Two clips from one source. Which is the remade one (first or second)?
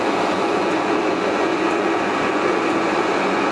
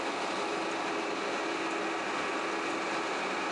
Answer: first